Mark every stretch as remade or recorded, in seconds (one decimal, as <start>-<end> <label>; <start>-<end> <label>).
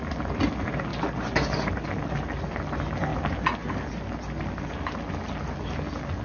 0.0-6.2 recorded